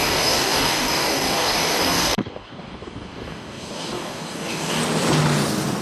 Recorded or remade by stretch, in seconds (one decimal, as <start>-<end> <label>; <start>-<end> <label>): 0.0-4.8 remade; 4.8-5.8 recorded